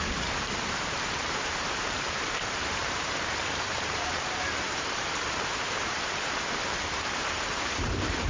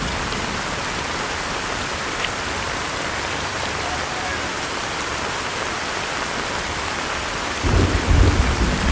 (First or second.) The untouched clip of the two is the second